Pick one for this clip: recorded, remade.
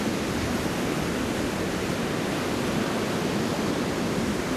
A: recorded